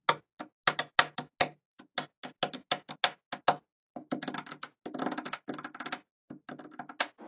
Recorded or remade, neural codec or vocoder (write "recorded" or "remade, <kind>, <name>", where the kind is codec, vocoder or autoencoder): recorded